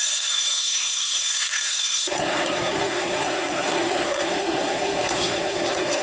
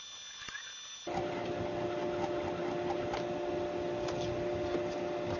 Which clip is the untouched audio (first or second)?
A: second